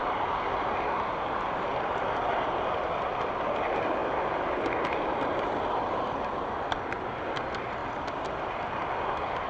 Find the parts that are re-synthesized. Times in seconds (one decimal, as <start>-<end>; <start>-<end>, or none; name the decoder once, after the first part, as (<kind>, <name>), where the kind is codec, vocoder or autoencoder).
1.7-2.6 (vocoder, BigVGAN v2)